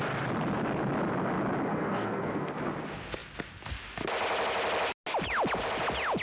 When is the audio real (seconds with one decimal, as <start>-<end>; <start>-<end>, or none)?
0.0-1.7; 2.5-6.2